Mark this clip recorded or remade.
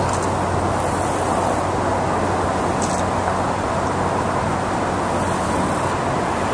recorded